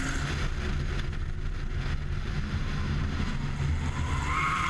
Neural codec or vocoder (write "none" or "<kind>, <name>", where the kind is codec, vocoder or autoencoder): none